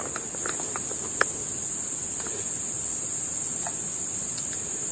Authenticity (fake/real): real